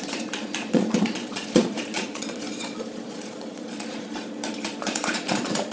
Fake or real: fake